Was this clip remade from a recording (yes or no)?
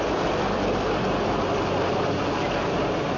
no